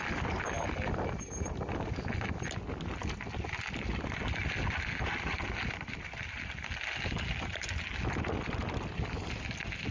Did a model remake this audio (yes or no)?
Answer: no